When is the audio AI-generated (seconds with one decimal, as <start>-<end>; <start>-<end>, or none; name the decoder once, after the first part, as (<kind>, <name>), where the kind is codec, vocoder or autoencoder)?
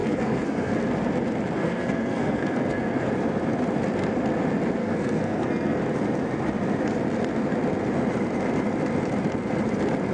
0.0-0.7 (codec, SNAC); 1.6-3.1; 4.8-5.8